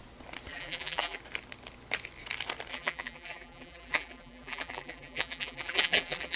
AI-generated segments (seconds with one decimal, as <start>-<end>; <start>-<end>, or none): 0.5-1.2; 2.7-6.4